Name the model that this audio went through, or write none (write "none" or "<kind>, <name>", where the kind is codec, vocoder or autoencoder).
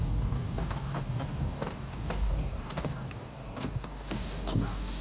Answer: codec, DAC